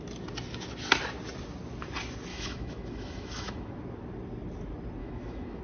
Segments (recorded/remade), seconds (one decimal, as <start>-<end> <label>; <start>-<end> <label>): 0.0-2.3 recorded; 2.3-3.7 remade; 3.7-5.0 recorded; 5.0-5.6 remade

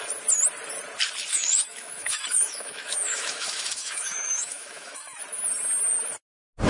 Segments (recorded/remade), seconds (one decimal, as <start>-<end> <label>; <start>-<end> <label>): 0.0-1.3 recorded; 1.3-5.2 remade; 5.2-6.7 recorded

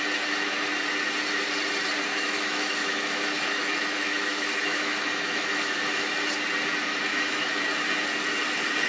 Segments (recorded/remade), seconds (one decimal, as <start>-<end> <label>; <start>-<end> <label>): 0.0-2.1 recorded; 2.1-6.1 remade; 6.1-7.1 recorded; 7.1-7.6 remade; 7.6-8.9 recorded

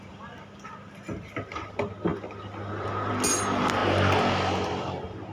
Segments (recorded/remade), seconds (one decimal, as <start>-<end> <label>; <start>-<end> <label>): 0.0-5.3 recorded

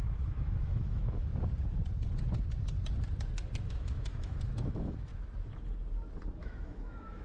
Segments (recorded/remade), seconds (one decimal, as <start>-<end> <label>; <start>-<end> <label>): 0.0-1.3 remade; 1.3-3.6 recorded; 3.6-5.1 remade; 5.1-6.3 recorded; 6.3-7.2 remade

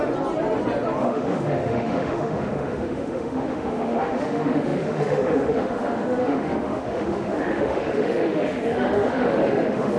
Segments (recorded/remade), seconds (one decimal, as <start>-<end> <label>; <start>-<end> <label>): 0.0-1.0 recorded; 1.0-10.0 remade